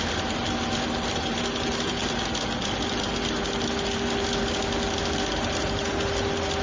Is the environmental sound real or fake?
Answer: real